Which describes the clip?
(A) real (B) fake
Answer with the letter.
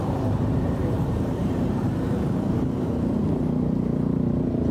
B